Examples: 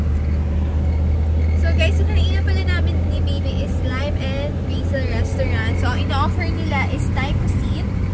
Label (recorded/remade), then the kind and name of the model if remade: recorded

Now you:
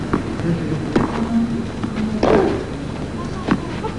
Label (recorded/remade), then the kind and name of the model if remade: recorded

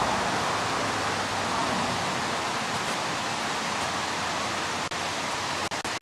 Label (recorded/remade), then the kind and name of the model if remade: recorded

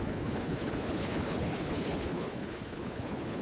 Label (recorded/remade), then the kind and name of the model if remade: remade, codec, HILCodec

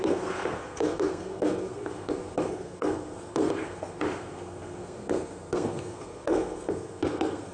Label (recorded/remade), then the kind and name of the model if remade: remade, codec, SNAC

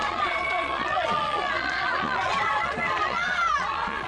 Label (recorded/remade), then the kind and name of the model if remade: remade, vocoder, Vocos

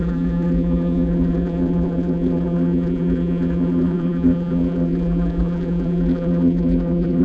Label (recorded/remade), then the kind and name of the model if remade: remade, vocoder, BigVGAN v2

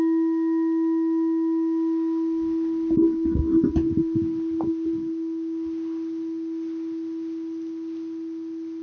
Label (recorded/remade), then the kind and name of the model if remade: recorded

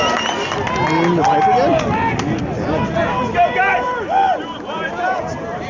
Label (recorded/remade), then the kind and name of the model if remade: recorded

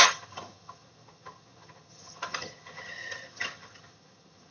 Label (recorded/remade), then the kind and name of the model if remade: remade, vocoder, HiFi-GAN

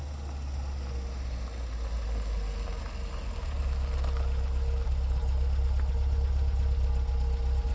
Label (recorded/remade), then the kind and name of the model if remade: recorded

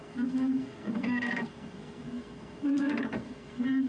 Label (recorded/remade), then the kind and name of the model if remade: remade, codec, SNAC